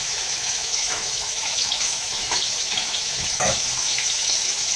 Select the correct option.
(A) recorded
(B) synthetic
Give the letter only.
B